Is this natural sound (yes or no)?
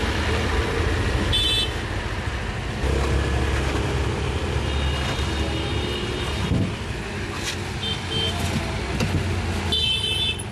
yes